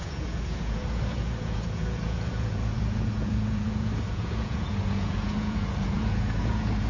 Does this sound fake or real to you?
fake